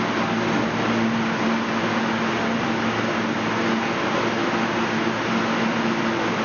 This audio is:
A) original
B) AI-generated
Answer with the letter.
A